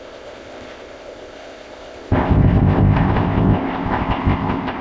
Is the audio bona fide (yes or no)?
no